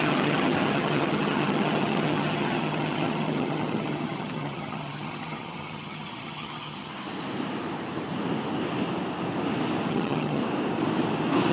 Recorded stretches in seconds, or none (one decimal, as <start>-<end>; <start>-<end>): 6.9-9.9; 10.4-11.5